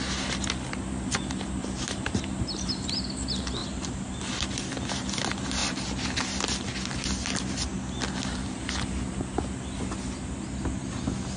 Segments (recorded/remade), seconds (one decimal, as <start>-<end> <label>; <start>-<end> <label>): 0.0-1.6 recorded; 1.6-3.0 remade; 3.0-3.6 recorded; 3.6-4.2 remade; 4.2-11.4 recorded